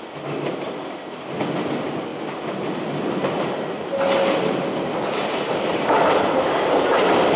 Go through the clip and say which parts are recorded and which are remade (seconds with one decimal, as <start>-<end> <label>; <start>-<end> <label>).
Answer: 0.0-7.4 recorded